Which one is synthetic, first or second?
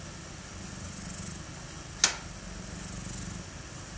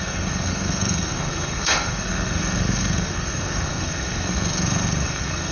second